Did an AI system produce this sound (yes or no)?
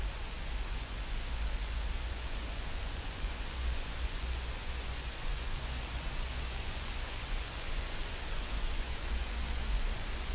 yes